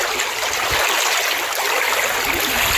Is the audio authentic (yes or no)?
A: yes